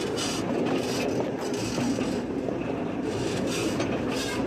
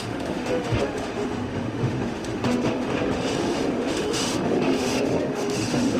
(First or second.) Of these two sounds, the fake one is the second